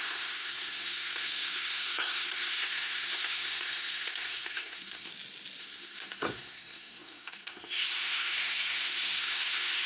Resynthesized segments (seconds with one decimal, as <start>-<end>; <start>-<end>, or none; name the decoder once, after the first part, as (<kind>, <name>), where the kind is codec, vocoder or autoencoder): 0.0-5.1 (codec, SNAC); 5.6-9.9